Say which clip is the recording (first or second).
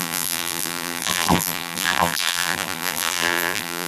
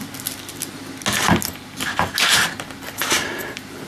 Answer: second